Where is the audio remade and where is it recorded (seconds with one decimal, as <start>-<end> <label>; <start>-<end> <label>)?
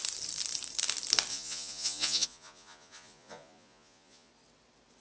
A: 0.0-1.3 recorded; 1.3-4.3 remade; 4.3-5.0 recorded